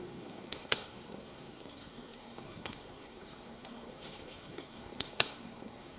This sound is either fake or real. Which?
fake